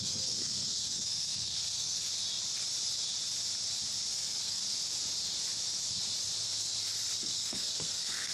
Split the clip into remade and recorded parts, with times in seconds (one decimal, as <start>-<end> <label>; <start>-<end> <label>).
0.0-2.1 remade; 2.1-4.1 recorded; 4.1-4.6 remade; 4.6-7.2 recorded; 7.2-8.3 remade